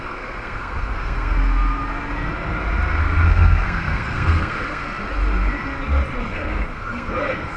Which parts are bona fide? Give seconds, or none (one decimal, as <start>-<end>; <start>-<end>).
1.8-3.0; 4.8-6.3